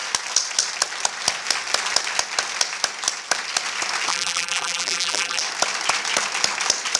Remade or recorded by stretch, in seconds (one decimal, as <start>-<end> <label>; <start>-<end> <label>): 0.0-4.1 recorded; 4.1-5.4 remade; 5.4-7.0 recorded